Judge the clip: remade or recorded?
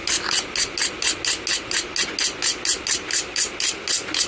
recorded